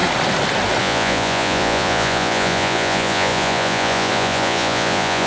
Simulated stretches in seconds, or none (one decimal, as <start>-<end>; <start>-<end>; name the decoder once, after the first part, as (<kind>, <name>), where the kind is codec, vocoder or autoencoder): 0.8-5.3 (vocoder, Vocos)